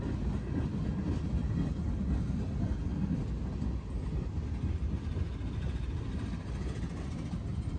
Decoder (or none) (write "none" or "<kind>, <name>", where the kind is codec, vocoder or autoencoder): none